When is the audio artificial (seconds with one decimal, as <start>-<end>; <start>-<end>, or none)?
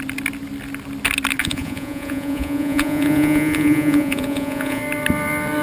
1.4-4.8